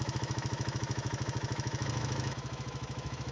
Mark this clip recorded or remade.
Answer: remade